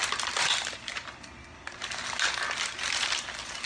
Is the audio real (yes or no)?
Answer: yes